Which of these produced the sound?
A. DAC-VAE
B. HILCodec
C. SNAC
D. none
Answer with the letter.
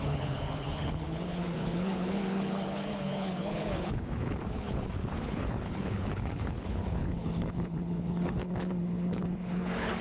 B